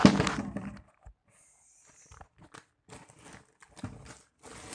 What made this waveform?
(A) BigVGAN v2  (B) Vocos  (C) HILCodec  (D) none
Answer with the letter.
D